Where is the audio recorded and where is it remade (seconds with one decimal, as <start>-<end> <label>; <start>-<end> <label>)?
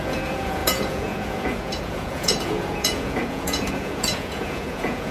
0.0-5.1 remade